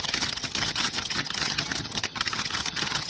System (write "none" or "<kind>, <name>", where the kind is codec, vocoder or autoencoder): vocoder, HiFi-GAN